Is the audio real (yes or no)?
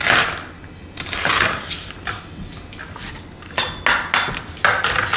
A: yes